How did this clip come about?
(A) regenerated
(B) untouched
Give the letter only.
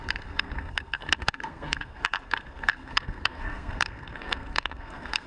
A